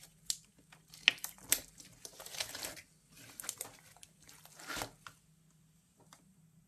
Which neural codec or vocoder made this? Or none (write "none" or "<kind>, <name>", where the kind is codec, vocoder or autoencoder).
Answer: none